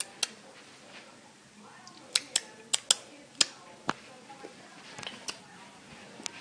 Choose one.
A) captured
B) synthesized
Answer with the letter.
A